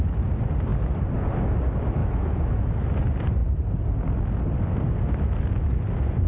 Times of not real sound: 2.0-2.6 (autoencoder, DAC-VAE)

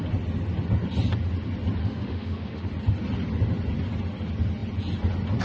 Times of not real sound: 1.8-2.7 (autoencoder, DAC-VAE)

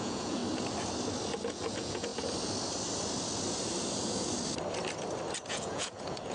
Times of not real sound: 0.0-0.4 (vocoder, Vocos); 1.5-2.1; 5.5-6.3

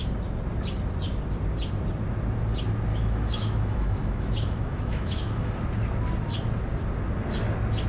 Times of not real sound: 2.9-5.5 (autoencoder, DAC-VAE)

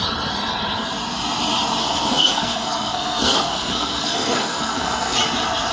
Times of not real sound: 1.8-5.2 (codec, SNAC)